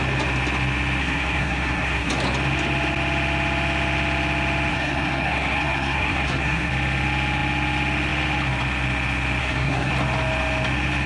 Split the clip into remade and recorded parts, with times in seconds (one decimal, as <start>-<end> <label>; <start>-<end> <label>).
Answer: 0.0-1.0 recorded; 1.0-2.1 remade; 2.1-4.7 recorded; 4.7-6.7 remade; 6.7-9.4 recorded; 9.4-9.9 remade; 9.9-11.1 recorded

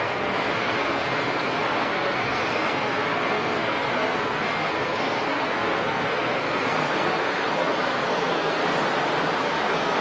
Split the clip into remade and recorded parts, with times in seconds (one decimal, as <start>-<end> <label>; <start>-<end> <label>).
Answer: 0.0-8.6 remade; 8.6-9.4 recorded; 9.4-10.0 remade